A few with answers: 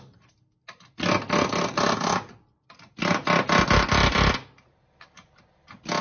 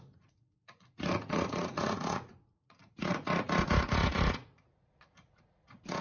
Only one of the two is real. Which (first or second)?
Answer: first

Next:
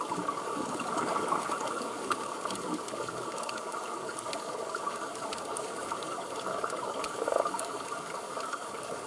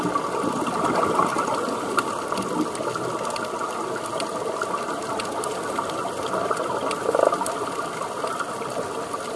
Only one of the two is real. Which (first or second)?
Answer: second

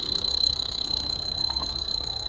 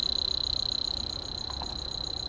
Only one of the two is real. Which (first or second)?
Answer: second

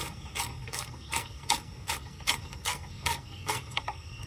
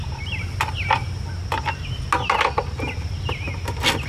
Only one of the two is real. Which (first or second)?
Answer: second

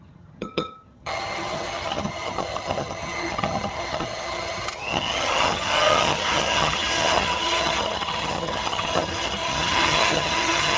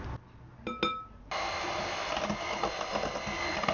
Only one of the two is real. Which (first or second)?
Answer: second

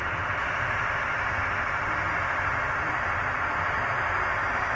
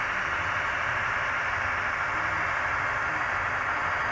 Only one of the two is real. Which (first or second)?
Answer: second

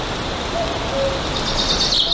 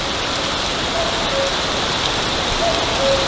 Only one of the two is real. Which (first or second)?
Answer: first